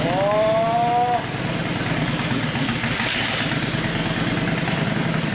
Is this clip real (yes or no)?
yes